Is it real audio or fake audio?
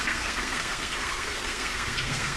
fake